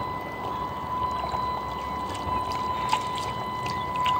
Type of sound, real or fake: real